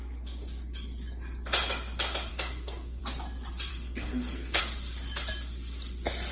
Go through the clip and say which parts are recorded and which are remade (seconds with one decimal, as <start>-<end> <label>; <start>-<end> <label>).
0.0-2.3 recorded; 2.3-3.0 remade; 3.0-3.7 recorded; 3.7-4.6 remade; 4.6-6.3 recorded